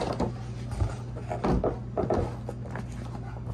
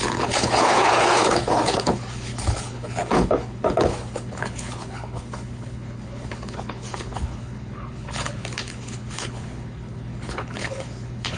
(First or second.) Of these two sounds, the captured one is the first